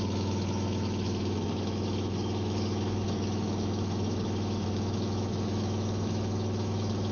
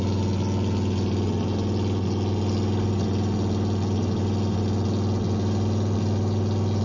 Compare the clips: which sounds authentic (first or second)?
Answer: second